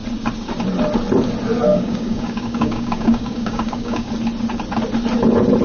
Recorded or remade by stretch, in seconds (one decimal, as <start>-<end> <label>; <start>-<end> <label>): 0.0-1.7 recorded; 1.7-4.1 remade; 4.1-5.6 recorded